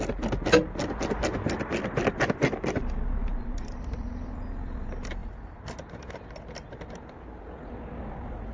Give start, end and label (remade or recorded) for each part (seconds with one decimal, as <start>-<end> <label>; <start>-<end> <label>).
0.0-8.5 recorded